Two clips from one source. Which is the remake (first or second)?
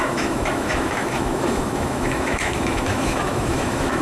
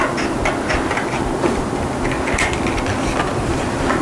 first